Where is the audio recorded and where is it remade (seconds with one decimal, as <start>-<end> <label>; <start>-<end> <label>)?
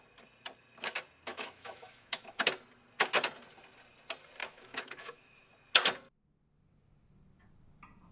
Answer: 0.0-1.3 recorded; 1.3-2.4 remade; 2.4-4.4 recorded; 4.4-5.5 remade; 5.5-8.1 recorded